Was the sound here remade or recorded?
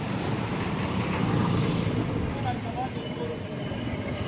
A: recorded